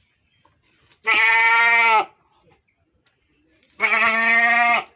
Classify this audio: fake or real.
real